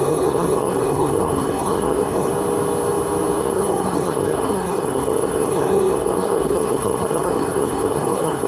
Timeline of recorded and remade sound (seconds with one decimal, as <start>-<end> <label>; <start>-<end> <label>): 0.0-2.3 remade; 2.3-3.4 recorded; 3.4-8.5 remade